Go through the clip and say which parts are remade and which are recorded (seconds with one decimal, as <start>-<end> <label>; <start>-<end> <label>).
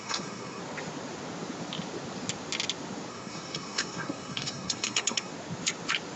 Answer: 0.0-0.6 remade; 0.6-3.1 recorded; 3.1-5.3 remade; 5.3-6.2 recorded